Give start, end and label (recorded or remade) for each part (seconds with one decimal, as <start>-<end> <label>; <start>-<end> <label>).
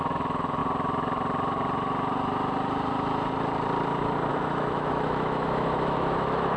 0.0-0.6 remade; 0.6-4.3 recorded; 4.3-6.6 remade